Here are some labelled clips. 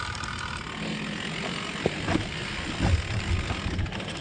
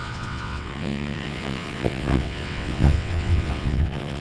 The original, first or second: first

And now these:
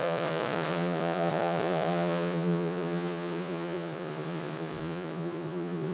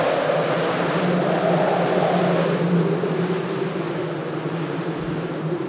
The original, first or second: second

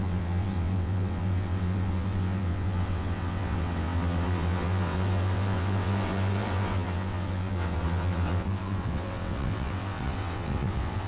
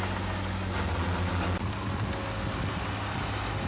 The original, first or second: second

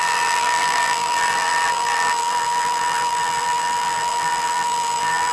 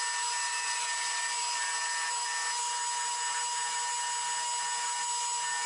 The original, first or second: second